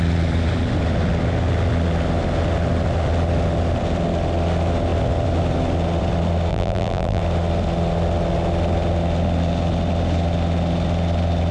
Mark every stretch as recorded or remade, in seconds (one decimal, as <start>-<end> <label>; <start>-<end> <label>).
0.0-6.5 recorded; 6.5-7.2 remade; 7.2-11.5 recorded